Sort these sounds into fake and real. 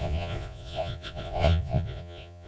fake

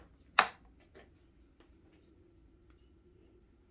real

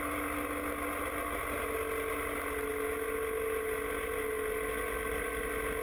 real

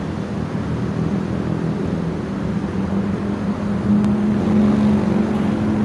real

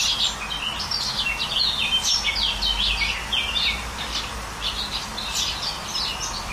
real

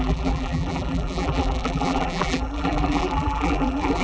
fake